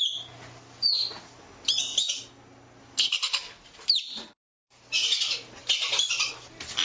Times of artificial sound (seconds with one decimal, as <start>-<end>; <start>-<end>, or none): none